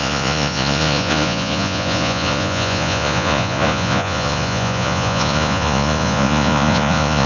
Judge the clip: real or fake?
fake